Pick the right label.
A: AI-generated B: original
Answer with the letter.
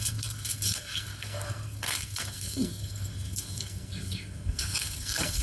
A